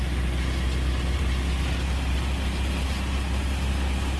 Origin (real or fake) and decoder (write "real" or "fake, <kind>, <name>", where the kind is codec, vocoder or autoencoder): real